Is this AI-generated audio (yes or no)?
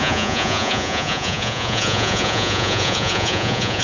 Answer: yes